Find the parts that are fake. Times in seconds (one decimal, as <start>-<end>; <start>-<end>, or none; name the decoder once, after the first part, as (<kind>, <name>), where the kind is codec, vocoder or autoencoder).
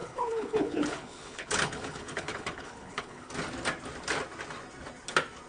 0.0-3.3 (codec, HILCodec)